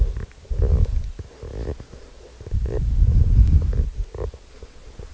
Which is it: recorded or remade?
recorded